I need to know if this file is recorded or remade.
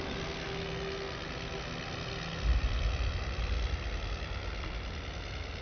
recorded